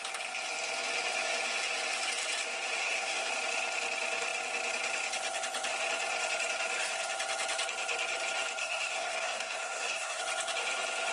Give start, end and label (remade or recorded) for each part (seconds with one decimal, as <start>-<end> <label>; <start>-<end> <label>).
0.0-2.8 recorded; 2.8-3.3 remade; 3.3-8.6 recorded; 8.6-10.2 remade; 10.2-11.1 recorded